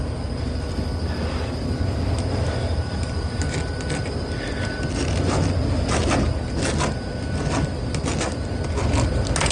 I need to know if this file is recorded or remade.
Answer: recorded